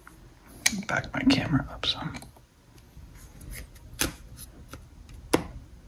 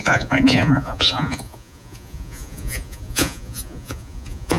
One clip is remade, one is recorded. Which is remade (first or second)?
second